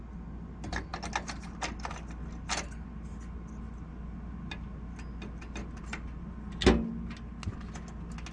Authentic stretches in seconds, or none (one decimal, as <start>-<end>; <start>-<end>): 0.0-8.3